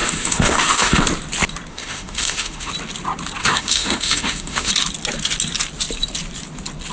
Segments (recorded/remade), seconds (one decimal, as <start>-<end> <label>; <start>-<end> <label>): 0.0-1.0 remade; 1.0-1.7 recorded; 1.7-2.7 remade; 2.7-3.4 recorded; 3.4-4.7 remade; 4.7-6.9 recorded